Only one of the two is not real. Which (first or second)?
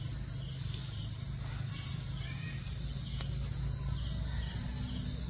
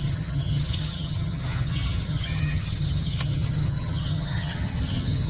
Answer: second